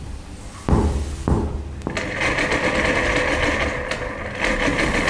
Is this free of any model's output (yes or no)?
yes